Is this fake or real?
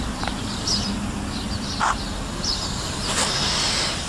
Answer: real